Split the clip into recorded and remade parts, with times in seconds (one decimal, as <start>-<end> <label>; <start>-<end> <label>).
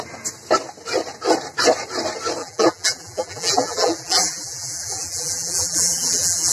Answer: 0.0-2.4 recorded; 2.4-6.5 remade